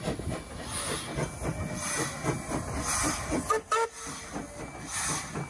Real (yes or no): yes